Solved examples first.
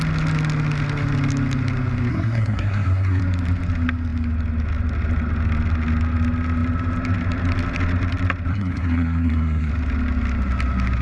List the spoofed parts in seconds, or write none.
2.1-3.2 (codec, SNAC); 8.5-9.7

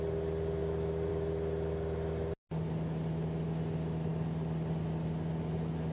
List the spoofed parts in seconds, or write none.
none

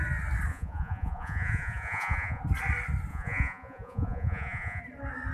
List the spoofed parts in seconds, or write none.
0.5-2.4 (vocoder, Vocos); 3.1-4.8